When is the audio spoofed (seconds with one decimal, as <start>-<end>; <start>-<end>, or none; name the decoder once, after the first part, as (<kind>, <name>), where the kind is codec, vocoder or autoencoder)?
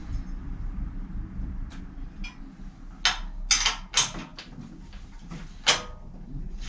0.0-2.4 (vocoder, BigVGAN v2)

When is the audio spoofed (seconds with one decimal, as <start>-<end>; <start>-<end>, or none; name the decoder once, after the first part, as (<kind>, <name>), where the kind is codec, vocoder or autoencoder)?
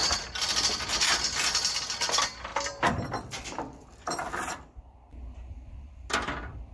2.5-5.9 (vocoder, BigVGAN v2)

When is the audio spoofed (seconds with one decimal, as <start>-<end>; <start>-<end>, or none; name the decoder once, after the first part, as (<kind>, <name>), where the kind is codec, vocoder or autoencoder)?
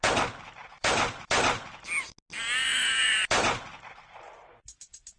0.6-1.6 (vocoder, BigVGAN v2); 3.0-3.6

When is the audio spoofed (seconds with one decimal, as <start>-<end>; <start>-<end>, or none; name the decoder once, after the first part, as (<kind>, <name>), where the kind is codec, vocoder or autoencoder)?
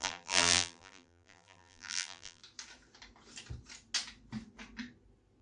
0.0-2.4 (vocoder, BigVGAN v2)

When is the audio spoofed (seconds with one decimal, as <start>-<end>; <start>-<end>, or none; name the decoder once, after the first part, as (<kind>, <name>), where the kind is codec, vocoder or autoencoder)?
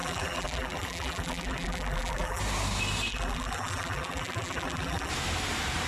0.0-2.4 (vocoder, BigVGAN v2); 3.1-5.1